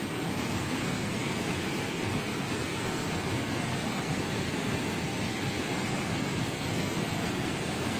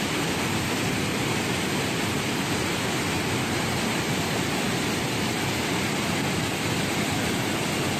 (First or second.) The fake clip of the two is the first